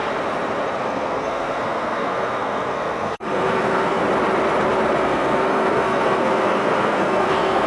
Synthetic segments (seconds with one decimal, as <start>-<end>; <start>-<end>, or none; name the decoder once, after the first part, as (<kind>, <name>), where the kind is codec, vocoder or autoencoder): 0.8-4.0 (codec, SNAC); 5.0-7.7